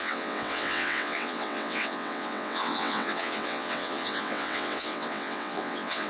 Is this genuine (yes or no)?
no